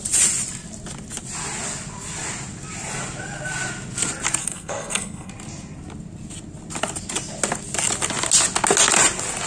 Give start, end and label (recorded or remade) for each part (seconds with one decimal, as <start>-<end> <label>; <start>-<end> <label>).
0.0-4.4 recorded; 4.4-5.3 remade; 5.3-9.5 recorded

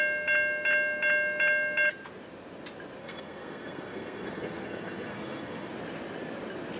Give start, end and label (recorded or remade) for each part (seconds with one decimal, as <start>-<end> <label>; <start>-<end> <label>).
0.0-3.0 recorded; 3.0-5.7 remade; 5.7-6.8 recorded